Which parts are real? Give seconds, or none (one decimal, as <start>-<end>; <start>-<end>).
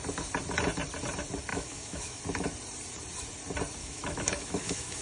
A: 0.0-1.5; 2.2-3.8